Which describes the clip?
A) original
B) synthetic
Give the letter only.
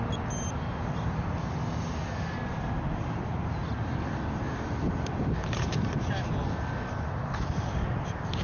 A